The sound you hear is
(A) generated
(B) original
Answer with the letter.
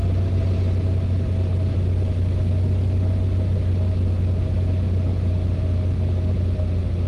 B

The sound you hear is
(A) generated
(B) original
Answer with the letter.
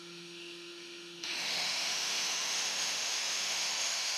A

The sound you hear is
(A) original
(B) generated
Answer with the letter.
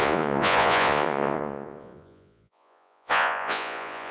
B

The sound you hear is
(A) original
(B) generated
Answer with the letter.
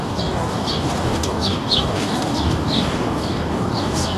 B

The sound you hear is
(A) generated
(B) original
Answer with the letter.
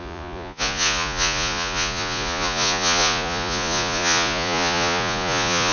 A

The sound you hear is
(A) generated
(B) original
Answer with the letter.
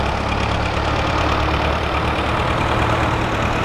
A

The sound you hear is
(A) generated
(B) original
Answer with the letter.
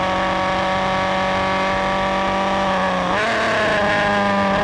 B